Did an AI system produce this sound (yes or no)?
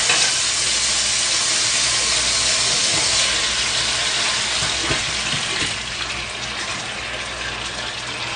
no